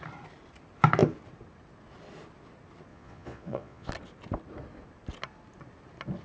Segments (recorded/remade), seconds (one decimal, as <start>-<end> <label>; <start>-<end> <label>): 0.0-2.9 recorded; 2.9-3.9 remade; 3.9-6.2 recorded